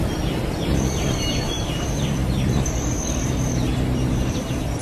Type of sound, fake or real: fake